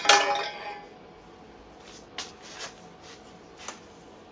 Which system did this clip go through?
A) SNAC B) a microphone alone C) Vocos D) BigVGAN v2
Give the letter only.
B